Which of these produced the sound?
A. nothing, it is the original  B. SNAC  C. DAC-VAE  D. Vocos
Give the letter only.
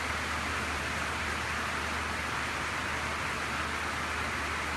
A